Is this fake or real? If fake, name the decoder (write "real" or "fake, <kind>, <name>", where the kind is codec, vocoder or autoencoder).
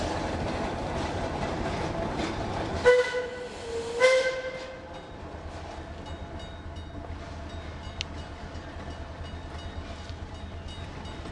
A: real